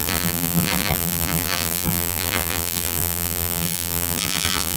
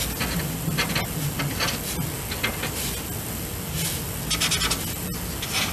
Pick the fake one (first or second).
first